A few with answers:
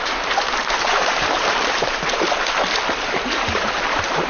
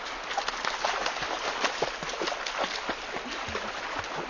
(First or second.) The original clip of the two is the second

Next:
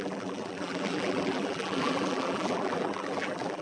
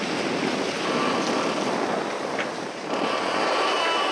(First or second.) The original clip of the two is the second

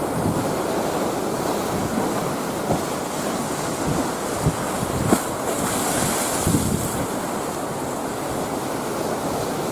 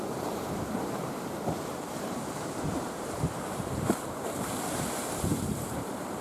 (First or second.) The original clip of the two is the first